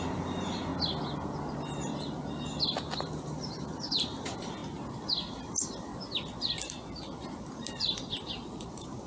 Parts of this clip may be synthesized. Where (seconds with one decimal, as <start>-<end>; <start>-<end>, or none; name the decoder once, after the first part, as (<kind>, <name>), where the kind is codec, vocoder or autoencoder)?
0.0-0.7 (vocoder, BigVGAN v2); 3.0-4.6; 5.3-5.9; 8.7-9.1